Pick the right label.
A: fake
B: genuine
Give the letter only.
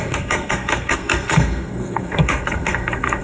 A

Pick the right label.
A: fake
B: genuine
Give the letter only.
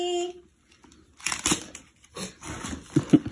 B